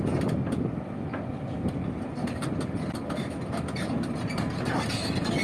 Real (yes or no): yes